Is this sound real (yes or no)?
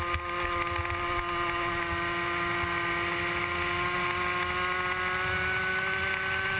yes